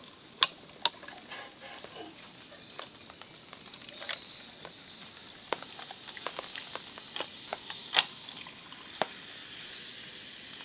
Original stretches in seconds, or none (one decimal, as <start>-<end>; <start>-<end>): 0.0-9.4